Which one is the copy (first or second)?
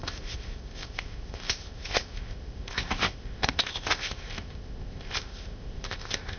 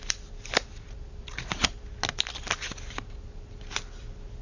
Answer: first